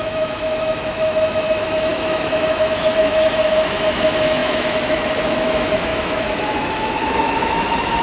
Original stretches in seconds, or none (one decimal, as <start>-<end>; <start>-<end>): none